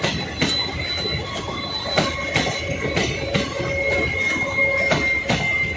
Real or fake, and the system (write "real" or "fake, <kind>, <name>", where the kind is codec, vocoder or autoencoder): real